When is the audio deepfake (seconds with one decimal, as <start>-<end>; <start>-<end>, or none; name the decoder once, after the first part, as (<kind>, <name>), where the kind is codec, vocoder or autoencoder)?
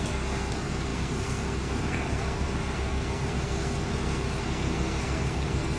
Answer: 0.0-5.8 (codec, SNAC)